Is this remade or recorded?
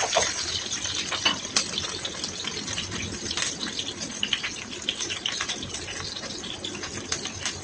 recorded